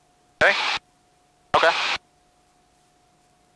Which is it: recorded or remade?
recorded